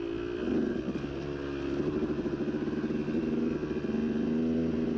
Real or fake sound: real